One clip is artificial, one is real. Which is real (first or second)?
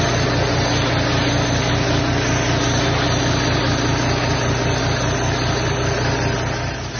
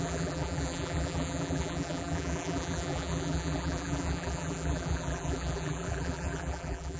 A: first